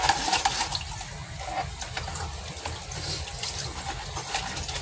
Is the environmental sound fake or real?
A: real